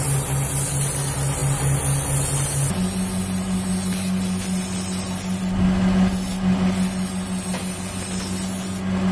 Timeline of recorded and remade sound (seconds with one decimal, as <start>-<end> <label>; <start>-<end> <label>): 0.0-9.1 recorded